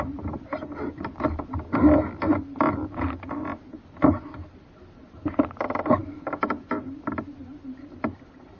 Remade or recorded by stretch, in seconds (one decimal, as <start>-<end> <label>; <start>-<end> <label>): 0.0-8.6 recorded